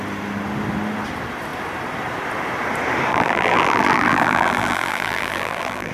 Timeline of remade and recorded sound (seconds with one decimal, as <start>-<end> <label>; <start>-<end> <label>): 0.0-3.1 recorded; 3.1-5.9 remade